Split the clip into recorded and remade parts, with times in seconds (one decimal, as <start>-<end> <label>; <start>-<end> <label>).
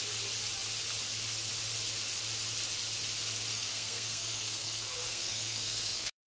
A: 0.0-3.5 recorded; 3.5-6.3 remade